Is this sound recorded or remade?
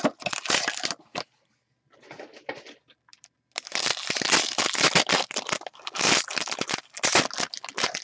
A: recorded